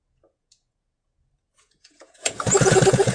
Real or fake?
fake